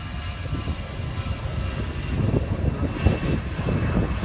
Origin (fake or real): real